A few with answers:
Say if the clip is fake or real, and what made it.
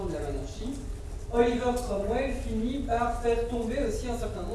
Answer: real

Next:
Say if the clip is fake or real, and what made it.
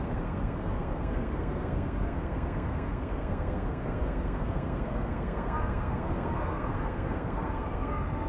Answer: fake, codec, SNAC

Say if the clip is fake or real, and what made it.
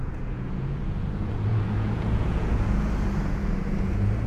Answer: fake, vocoder, Vocos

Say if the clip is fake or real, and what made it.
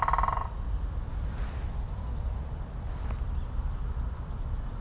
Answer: real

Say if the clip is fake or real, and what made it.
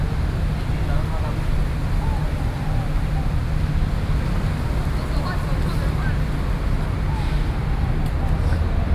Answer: real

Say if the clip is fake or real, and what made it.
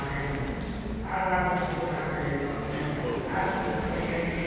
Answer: real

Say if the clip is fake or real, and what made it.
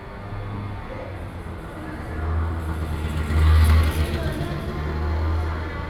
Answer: real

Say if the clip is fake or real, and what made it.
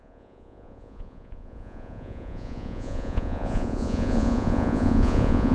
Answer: fake, vocoder, Vocos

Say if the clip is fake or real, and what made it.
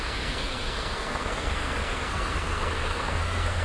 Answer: fake, codec, SNAC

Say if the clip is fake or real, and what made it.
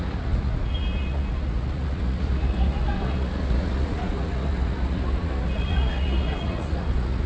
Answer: fake, vocoder, Vocos